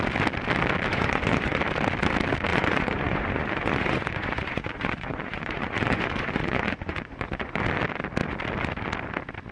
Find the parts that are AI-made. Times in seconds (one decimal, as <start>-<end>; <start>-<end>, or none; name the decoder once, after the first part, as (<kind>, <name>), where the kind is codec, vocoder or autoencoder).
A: 0.9-1.6 (vocoder, Vocos); 2.5-7.6